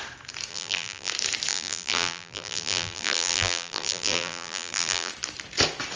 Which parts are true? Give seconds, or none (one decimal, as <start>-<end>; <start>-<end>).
0.0-0.5; 1.1-1.5; 5.1-6.0